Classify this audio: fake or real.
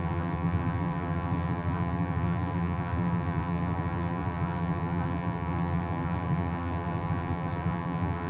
fake